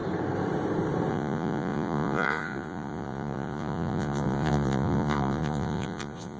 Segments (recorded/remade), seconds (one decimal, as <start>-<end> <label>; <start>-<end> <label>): 0.0-1.1 recorded; 1.1-6.4 remade

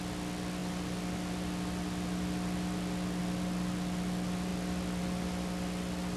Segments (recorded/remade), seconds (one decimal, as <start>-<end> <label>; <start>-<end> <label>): 0.0-6.2 recorded